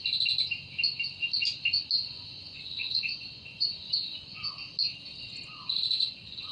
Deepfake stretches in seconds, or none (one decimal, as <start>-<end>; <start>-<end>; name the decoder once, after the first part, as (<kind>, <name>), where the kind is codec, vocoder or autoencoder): 2.0-4.5 (vocoder, Vocos); 5.5-6.5